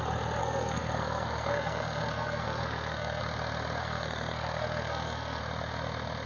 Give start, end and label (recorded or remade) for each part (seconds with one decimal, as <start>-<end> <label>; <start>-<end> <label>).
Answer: 0.0-0.4 recorded; 0.4-3.2 remade; 3.2-3.8 recorded; 3.8-5.4 remade; 5.4-6.3 recorded